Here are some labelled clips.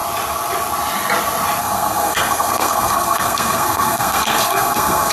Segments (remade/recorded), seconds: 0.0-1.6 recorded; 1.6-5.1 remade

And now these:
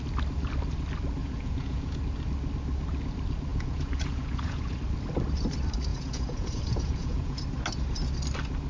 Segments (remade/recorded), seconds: 0.0-1.2 recorded; 1.2-2.0 remade; 2.0-3.5 recorded; 3.5-4.8 remade; 4.8-5.9 recorded; 5.9-7.4 remade; 7.4-8.7 recorded